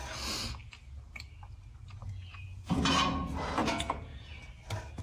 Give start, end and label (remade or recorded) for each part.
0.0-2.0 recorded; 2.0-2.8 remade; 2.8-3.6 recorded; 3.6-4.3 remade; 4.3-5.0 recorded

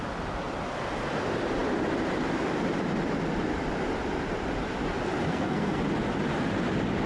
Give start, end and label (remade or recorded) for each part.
0.0-5.3 recorded; 5.3-5.8 remade; 5.8-7.1 recorded

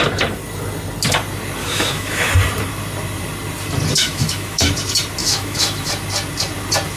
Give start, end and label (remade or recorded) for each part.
0.0-1.6 recorded; 1.6-2.3 remade; 2.3-4.0 recorded; 4.0-4.7 remade; 4.7-5.2 recorded; 5.2-5.9 remade; 5.9-7.0 recorded

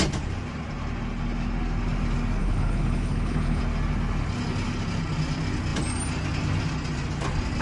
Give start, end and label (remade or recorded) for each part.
0.0-2.4 recorded; 2.4-3.6 remade; 3.6-7.6 recorded

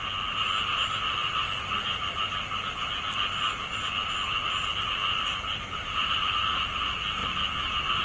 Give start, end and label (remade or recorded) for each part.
0.0-8.0 recorded